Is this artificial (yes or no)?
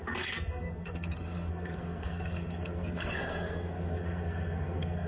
yes